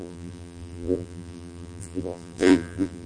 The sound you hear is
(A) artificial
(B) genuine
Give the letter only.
A